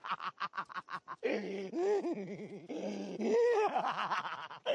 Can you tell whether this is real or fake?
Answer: real